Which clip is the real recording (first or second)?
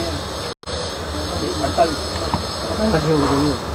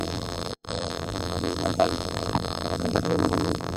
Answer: first